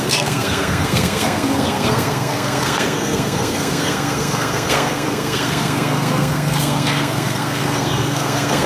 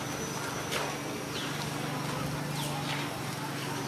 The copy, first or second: first